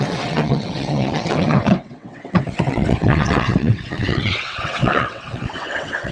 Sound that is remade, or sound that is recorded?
remade